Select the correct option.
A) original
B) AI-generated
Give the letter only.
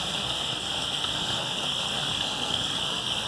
B